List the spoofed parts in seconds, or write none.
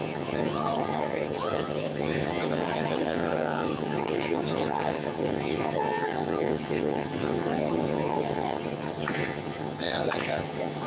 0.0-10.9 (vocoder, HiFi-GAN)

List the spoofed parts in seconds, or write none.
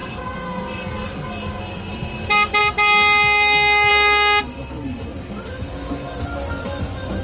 none